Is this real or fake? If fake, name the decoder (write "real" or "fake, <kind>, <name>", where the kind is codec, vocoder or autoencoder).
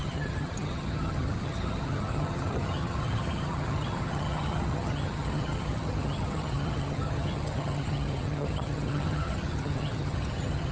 fake, vocoder, HiFi-GAN